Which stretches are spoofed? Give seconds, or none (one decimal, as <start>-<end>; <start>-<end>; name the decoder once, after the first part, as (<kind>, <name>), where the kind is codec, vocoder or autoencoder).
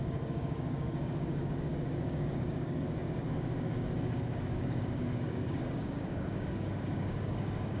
0.0-7.8 (codec, DAC)